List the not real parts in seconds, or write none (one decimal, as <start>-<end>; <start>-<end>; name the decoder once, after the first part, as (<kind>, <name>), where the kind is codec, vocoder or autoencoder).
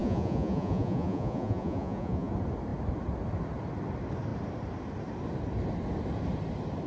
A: 0.0-2.3 (vocoder, Vocos)